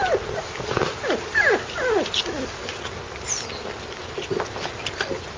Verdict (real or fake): real